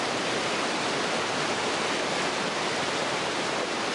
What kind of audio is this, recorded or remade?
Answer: recorded